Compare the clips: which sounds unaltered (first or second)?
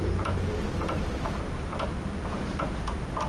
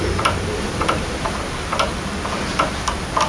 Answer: first